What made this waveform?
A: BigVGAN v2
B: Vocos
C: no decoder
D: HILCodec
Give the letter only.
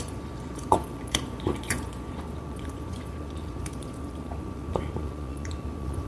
B